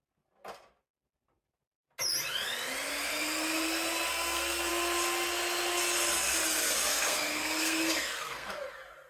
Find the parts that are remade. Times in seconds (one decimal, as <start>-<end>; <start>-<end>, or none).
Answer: 4.1-4.7; 6.9-8.5